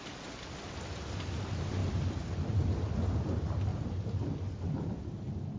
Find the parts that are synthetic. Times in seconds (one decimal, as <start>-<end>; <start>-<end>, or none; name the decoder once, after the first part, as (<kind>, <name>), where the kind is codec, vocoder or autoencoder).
none